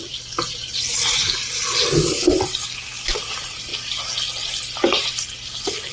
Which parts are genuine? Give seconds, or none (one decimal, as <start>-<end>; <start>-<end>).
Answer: 1.2-3.2; 3.7-4.6